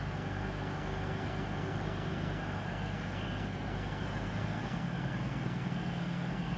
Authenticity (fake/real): fake